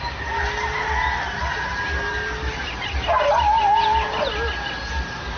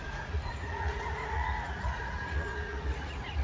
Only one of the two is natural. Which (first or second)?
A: first